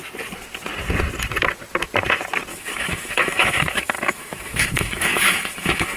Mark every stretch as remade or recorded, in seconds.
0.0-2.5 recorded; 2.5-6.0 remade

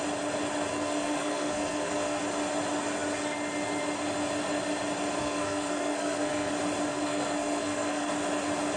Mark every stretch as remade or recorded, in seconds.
0.0-0.7 recorded; 0.7-2.2 remade; 2.2-5.2 recorded; 5.2-6.5 remade; 6.5-6.9 recorded; 6.9-8.1 remade; 8.1-8.8 recorded

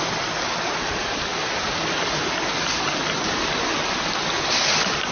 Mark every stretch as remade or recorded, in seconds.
0.0-5.1 recorded